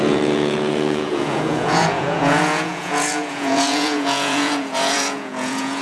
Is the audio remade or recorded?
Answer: remade